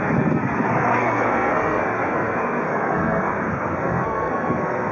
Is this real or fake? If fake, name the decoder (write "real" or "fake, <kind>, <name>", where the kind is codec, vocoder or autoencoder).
fake, codec, SNAC